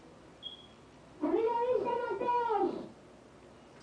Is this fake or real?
real